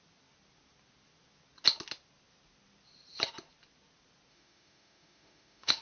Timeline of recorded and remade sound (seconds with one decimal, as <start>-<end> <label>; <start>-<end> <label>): 0.0-4.3 recorded; 4.3-5.8 remade